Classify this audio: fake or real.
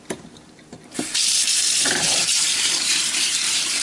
fake